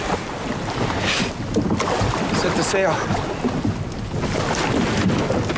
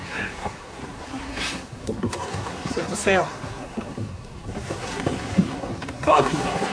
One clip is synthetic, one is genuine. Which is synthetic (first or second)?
second